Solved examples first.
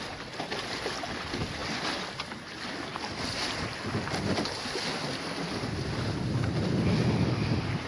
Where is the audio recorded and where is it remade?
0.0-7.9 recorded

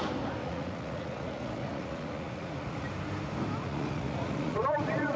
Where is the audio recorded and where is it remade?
0.0-0.4 recorded; 0.4-2.9 remade; 2.9-3.6 recorded; 3.6-5.2 remade

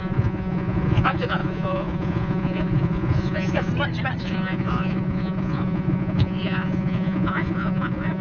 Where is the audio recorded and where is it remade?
0.0-3.7 remade; 3.7-4.2 recorded; 4.2-8.2 remade

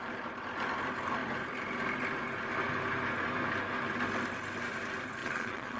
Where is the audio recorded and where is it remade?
0.0-5.2 recorded; 5.2-5.8 remade

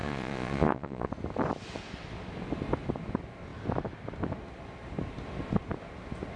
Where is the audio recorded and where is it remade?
0.0-1.1 remade; 1.1-6.4 recorded

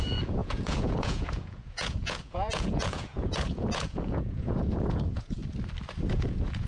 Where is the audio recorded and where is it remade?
0.0-5.4 remade; 5.4-6.1 recorded; 6.1-6.7 remade

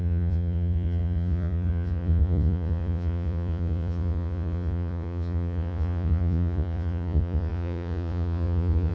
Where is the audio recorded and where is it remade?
0.0-8.9 remade

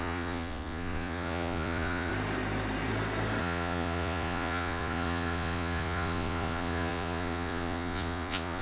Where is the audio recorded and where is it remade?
0.0-2.1 remade; 2.1-3.4 recorded; 3.4-8.6 remade